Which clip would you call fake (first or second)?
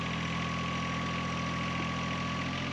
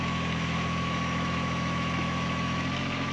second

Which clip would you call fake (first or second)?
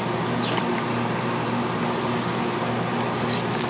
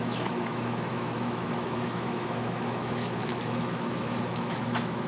second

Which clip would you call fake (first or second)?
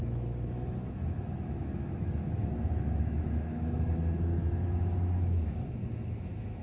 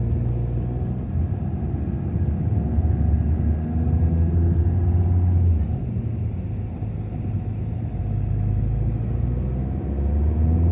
first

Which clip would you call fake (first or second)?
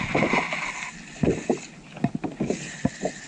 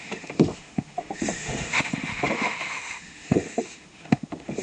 second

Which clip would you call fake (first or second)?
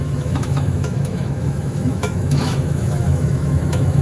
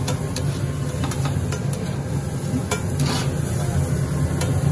first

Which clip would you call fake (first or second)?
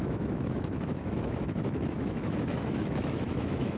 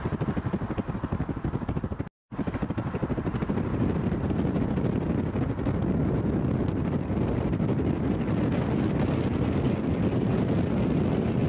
first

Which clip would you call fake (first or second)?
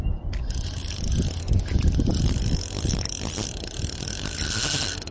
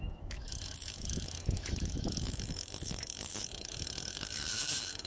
second